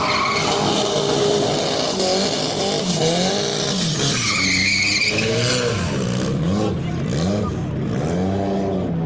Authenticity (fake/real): real